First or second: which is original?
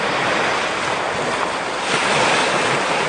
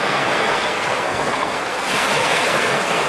first